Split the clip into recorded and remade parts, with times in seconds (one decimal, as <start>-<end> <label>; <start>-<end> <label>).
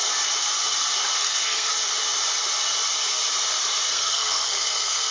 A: 0.0-1.2 recorded; 1.2-1.7 remade; 1.7-3.9 recorded; 3.9-5.1 remade